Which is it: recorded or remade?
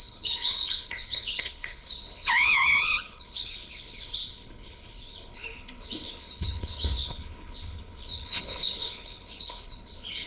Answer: remade